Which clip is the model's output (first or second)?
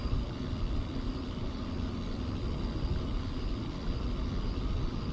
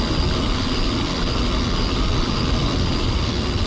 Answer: first